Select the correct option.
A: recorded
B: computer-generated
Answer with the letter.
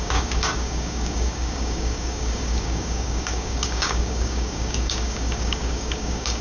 B